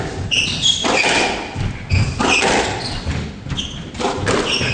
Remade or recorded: recorded